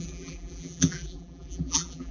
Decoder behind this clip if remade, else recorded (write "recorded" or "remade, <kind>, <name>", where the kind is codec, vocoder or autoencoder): remade, vocoder, BigVGAN v2